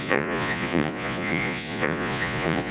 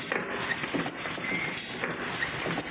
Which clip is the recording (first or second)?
second